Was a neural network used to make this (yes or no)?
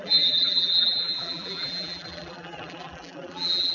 yes